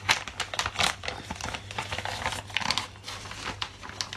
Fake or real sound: real